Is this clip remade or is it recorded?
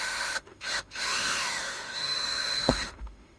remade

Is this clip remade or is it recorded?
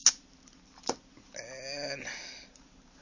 recorded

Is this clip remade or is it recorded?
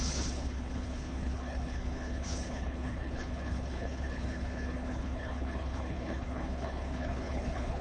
remade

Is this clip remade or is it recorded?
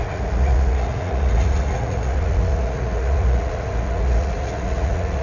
remade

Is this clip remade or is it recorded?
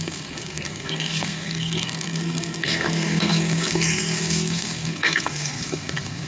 remade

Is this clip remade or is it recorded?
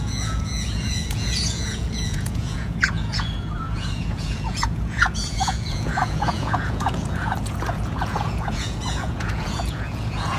remade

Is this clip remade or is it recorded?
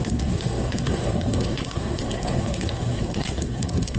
remade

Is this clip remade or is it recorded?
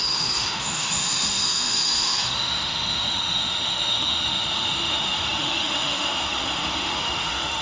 remade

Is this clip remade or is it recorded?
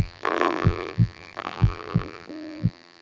remade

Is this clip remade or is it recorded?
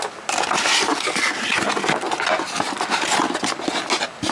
recorded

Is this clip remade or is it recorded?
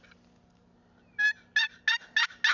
recorded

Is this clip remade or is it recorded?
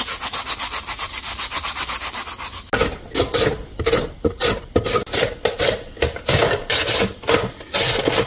recorded